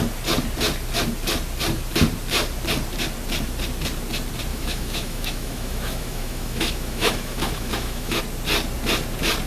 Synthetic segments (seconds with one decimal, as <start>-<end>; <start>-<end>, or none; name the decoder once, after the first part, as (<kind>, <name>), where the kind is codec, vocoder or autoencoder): 4.5-8.2 (autoencoder, DAC-VAE)